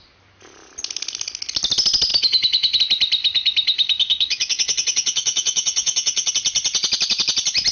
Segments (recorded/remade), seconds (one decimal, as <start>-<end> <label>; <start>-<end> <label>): 0.0-2.1 recorded; 2.1-2.8 remade; 2.8-3.2 recorded; 3.2-6.3 remade; 6.3-7.7 recorded